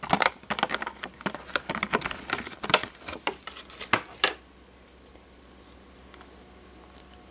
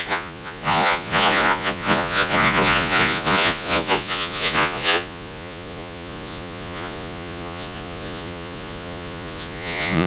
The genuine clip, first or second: first